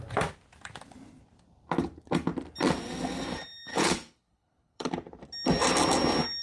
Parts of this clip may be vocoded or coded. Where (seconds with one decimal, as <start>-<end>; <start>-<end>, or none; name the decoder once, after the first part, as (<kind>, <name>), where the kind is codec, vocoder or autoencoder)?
3.7-4.9 (codec, HILCodec)